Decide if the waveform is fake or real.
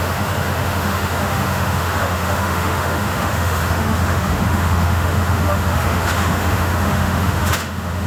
fake